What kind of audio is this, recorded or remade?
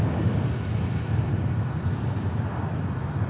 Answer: recorded